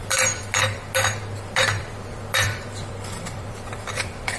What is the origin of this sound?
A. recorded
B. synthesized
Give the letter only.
B